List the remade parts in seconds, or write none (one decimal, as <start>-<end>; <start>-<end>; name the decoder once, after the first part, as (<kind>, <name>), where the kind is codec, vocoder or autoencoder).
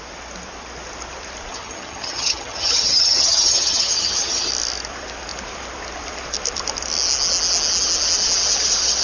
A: 1.5-4.5 (vocoder, HiFi-GAN)